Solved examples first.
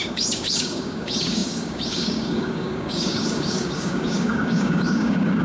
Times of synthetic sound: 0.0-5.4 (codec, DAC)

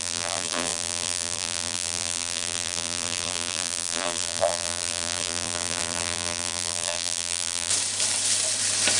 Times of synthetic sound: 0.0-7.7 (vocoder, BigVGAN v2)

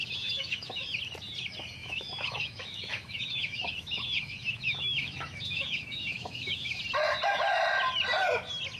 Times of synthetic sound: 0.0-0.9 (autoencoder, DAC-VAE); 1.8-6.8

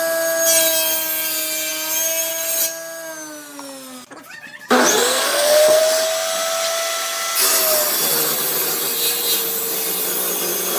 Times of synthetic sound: 4.9-5.8 (codec, SNAC)

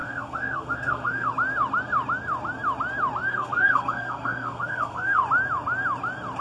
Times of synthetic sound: 0.0-1.3 (codec, SNAC); 3.3-5.2

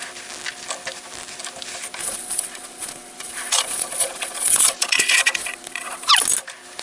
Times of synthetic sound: 2.0-6.1 (vocoder, Vocos)

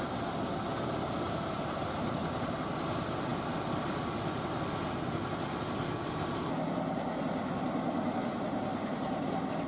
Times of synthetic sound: none